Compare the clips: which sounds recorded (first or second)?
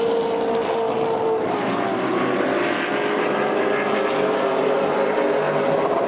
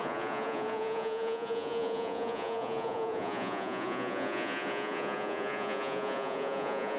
first